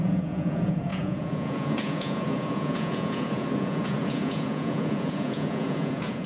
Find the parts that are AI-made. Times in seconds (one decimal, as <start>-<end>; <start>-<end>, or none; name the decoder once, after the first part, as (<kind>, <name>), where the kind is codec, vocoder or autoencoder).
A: 0.0-6.3 (vocoder, Vocos)